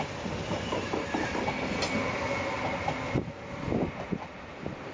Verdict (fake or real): real